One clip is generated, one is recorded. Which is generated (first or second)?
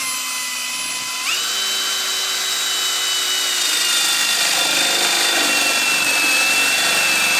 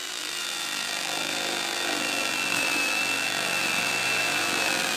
second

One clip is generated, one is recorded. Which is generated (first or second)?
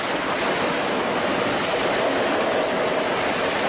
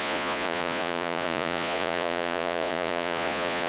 second